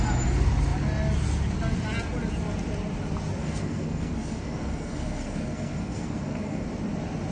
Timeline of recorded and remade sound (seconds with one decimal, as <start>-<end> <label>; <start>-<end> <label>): 0.0-3.4 recorded; 3.4-6.7 remade; 6.7-7.3 recorded